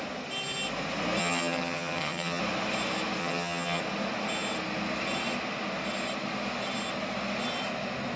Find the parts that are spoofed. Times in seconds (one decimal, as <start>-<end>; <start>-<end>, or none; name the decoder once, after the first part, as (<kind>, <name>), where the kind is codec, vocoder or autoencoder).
1.2-2.4 (vocoder, HiFi-GAN); 3.2-3.8